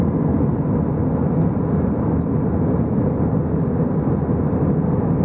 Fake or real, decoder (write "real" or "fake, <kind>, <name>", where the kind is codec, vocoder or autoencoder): real